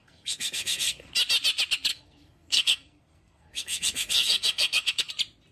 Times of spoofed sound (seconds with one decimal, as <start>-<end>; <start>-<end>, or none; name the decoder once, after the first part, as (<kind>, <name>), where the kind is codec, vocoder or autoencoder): 0.0-1.1 (codec, SNAC); 1.9-5.1